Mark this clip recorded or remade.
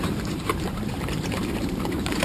remade